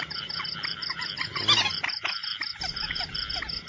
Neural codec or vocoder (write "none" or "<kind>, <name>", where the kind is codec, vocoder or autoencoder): none